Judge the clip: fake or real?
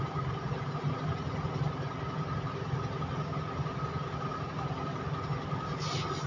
real